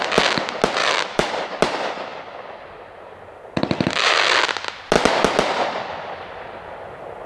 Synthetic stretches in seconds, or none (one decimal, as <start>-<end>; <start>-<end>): 0.8-1.3